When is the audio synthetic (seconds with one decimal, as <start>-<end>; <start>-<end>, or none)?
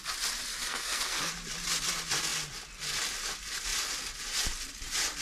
0.5-1.3